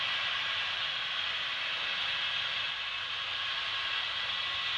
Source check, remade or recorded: recorded